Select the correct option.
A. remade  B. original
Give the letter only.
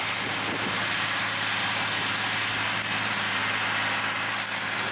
B